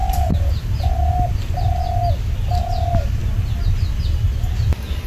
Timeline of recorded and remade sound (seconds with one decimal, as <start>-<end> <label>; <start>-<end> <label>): 0.0-0.9 remade; 0.9-5.1 recorded